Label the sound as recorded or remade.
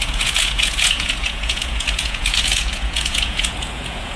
remade